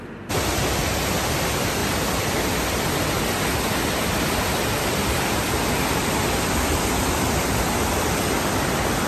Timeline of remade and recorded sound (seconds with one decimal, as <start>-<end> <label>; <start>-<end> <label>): 0.0-1.8 recorded; 1.8-5.7 remade; 5.7-9.1 recorded